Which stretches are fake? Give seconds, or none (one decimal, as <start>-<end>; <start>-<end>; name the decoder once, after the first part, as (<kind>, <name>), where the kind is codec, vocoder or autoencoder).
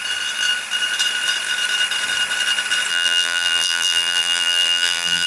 2.9-5.3 (vocoder, BigVGAN v2)